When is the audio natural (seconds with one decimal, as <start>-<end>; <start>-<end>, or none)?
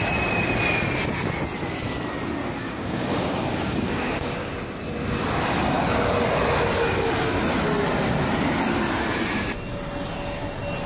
0.0-2.6; 4.5-10.9